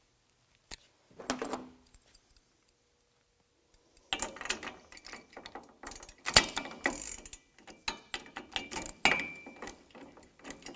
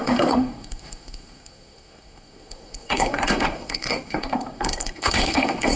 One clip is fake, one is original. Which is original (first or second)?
first